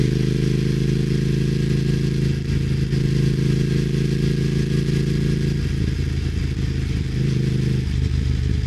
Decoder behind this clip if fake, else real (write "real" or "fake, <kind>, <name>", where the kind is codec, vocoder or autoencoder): real